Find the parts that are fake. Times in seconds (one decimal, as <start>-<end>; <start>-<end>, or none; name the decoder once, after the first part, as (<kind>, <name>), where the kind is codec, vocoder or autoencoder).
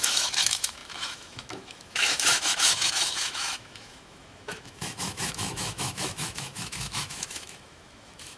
0.0-8.4 (autoencoder, DAC-VAE)